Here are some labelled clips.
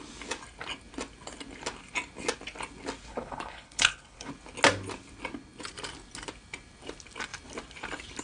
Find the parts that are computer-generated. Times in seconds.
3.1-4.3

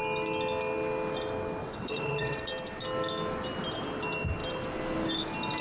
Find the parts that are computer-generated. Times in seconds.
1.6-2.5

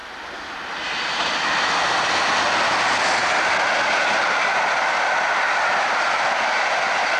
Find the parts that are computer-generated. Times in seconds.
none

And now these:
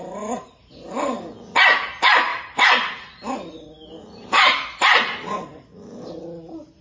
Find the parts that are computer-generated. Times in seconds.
none